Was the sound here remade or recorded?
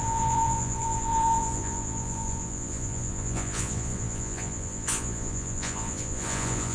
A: remade